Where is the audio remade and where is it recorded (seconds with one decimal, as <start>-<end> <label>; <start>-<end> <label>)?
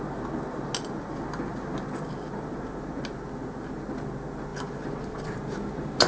0.0-6.1 recorded